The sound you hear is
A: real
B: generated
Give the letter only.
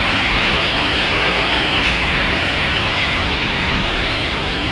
B